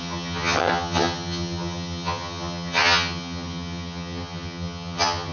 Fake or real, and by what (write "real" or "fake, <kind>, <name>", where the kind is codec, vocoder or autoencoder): fake, vocoder, HiFi-GAN